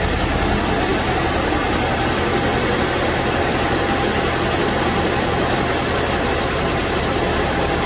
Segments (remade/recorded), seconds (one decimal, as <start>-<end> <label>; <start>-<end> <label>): 0.0-7.9 recorded